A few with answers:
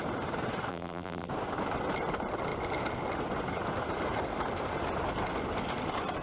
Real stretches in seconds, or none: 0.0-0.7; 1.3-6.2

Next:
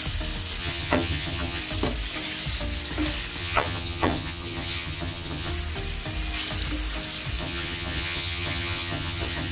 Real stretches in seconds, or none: 0.0-0.6; 1.6-3.4; 5.5-7.4